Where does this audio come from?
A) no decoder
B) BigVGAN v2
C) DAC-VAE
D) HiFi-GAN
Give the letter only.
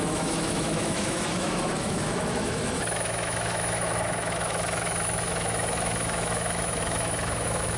C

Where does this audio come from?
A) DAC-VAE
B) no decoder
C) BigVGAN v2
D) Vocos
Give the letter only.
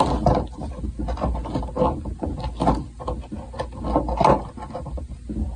B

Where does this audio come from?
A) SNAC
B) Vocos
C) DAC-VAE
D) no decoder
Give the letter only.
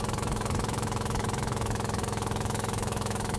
C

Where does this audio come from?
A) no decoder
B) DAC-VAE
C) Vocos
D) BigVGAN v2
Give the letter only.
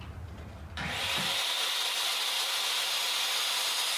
A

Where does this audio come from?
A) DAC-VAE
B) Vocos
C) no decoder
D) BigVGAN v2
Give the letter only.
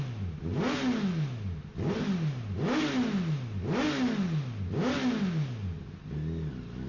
C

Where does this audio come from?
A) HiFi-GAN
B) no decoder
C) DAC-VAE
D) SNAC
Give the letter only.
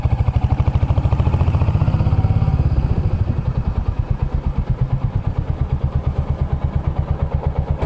B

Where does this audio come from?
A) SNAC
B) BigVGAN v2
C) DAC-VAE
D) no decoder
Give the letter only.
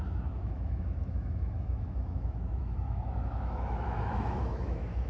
C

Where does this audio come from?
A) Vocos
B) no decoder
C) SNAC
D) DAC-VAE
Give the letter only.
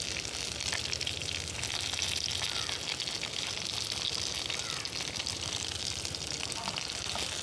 B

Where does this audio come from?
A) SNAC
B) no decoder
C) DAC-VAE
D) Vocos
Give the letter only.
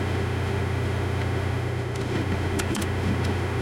C